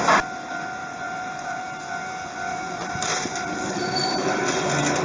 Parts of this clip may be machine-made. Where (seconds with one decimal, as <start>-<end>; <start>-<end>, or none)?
0.8-1.6; 2.5-4.4